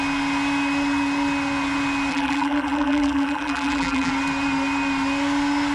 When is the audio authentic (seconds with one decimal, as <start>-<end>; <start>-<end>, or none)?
0.0-2.1; 4.1-5.7